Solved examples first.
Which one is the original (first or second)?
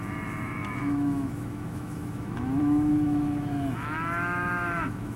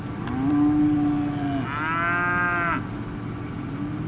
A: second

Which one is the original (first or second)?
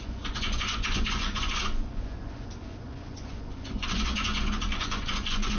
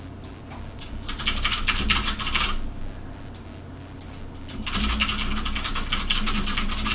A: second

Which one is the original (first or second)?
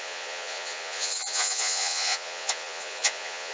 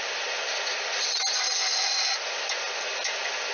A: second